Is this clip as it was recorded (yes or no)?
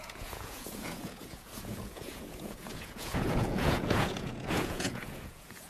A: no